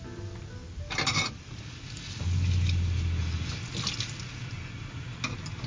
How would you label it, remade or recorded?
recorded